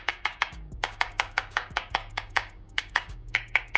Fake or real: fake